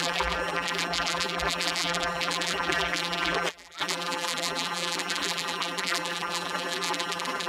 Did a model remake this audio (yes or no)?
yes